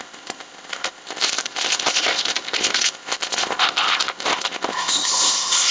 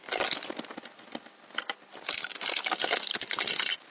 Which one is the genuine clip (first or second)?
second